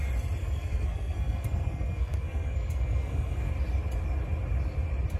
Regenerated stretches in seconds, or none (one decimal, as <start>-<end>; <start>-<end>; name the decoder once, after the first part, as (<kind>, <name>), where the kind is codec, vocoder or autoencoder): 0.4-3.5 (codec, SNAC)